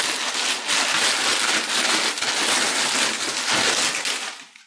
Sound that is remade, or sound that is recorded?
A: recorded